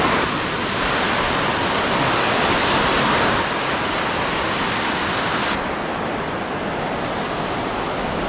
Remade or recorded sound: recorded